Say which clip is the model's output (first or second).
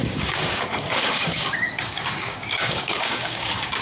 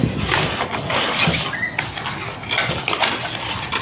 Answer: first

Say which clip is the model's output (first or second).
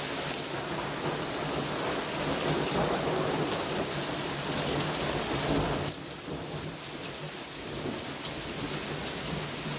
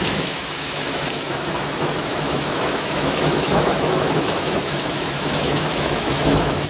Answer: second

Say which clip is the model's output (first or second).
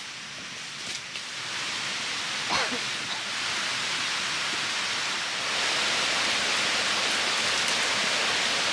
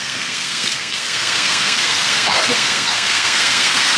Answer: second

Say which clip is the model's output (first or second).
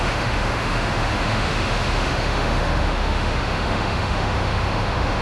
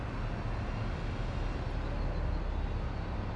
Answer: first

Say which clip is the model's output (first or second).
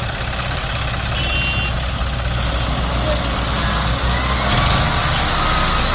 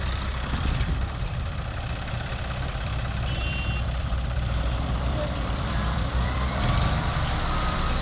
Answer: second